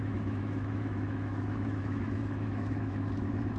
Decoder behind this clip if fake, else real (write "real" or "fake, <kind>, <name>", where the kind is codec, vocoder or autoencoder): fake, autoencoder, DAC-VAE